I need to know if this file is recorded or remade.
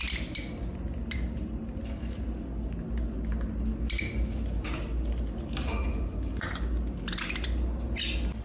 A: recorded